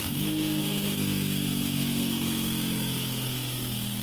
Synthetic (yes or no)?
yes